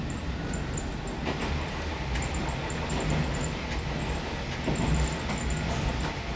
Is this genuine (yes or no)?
yes